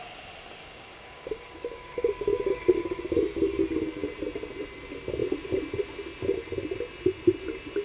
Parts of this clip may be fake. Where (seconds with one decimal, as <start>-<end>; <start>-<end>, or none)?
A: 0.6-3.0